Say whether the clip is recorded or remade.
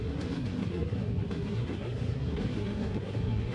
remade